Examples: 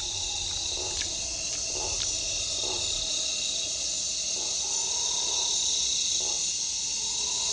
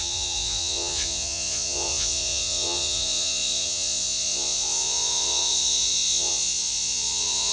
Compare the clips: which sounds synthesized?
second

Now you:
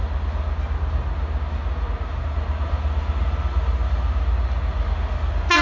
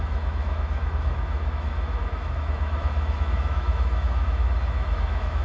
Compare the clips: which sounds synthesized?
second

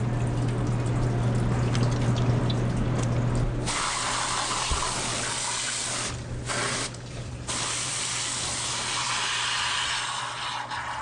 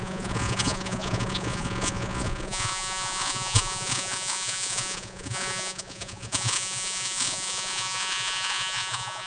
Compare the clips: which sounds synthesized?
second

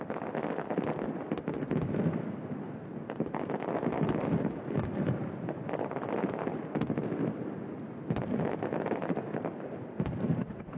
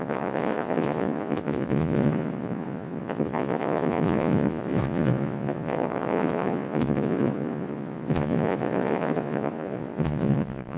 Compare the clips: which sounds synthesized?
second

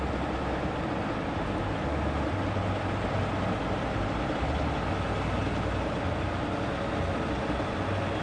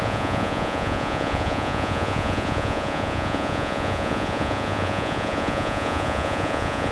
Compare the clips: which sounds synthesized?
second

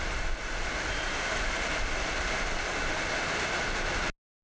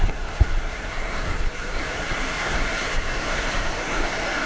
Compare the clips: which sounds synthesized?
second